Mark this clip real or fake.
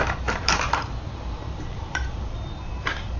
fake